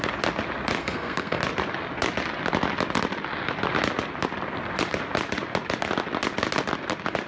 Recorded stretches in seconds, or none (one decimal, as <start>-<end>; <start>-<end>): 0.0-0.8; 1.4-7.3